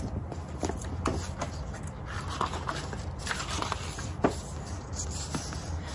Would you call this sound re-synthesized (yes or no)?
no